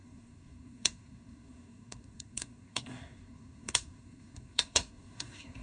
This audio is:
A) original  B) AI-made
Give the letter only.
B